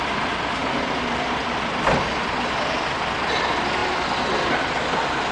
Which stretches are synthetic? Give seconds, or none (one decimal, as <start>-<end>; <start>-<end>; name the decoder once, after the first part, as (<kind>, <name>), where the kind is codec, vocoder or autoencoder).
none